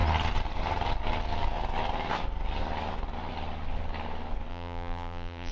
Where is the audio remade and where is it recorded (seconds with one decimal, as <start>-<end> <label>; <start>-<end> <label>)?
0.0-4.5 recorded; 4.5-5.5 remade